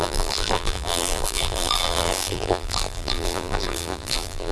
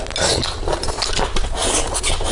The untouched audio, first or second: second